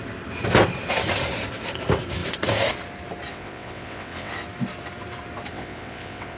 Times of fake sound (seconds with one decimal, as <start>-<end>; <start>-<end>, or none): 3.3-4.3; 5.5-6.4